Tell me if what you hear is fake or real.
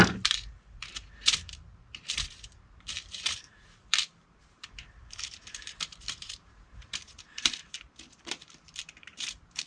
fake